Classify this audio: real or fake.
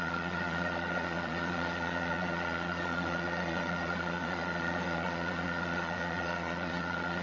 fake